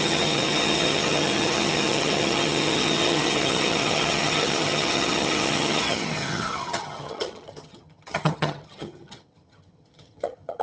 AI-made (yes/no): yes